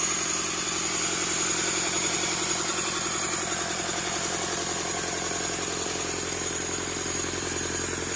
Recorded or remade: remade